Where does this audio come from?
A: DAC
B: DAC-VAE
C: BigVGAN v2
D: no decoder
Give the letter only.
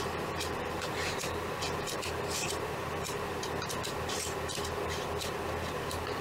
C